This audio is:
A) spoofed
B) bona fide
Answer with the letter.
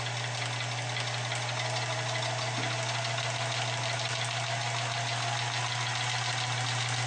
B